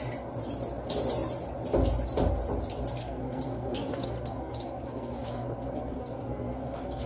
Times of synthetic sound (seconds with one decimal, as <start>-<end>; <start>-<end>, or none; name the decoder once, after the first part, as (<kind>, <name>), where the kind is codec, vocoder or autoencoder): 3.0-7.1 (codec, SNAC)